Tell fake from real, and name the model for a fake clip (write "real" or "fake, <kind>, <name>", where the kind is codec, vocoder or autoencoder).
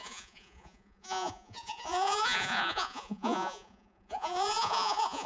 fake, vocoder, Vocos